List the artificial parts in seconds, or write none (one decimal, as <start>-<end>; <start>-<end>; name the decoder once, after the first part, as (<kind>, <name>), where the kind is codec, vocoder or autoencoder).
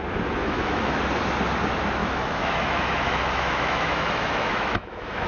0.4-1.0 (autoencoder, DAC-VAE); 2.0-5.3